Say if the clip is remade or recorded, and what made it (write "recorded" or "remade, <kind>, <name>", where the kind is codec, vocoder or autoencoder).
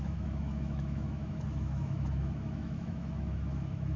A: remade, autoencoder, DAC-VAE